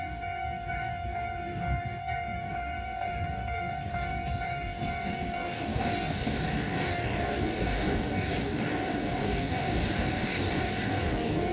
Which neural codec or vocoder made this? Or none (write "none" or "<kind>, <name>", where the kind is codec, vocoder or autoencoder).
codec, DAC